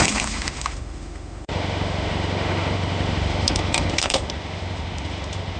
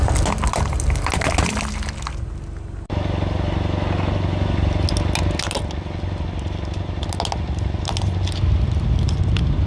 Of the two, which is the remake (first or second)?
first